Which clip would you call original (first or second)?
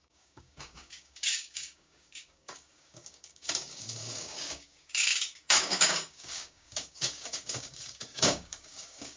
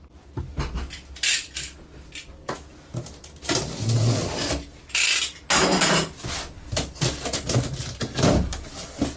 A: second